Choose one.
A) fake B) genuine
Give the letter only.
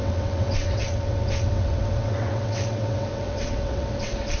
A